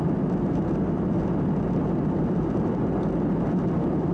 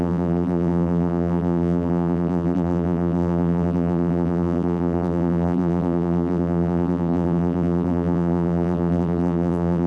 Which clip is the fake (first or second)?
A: second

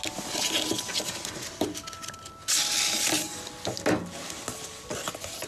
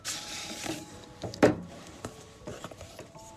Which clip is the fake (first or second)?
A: second